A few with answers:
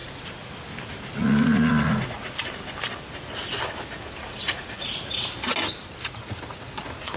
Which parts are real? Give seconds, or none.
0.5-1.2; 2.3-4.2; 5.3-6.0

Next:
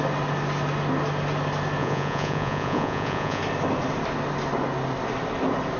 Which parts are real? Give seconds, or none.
0.0-1.8; 3.4-5.8

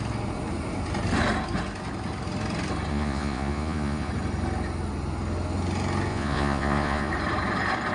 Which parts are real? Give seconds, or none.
0.0-2.9; 4.1-6.1; 7.1-7.9

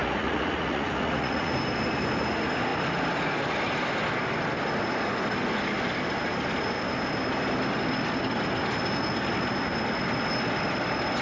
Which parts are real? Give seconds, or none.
1.5-11.2

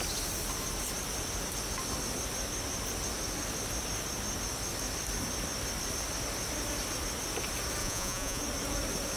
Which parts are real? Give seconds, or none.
0.0-7.8; 8.4-9.2

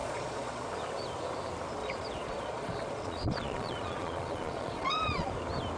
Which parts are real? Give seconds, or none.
0.6-1.8; 5.3-5.8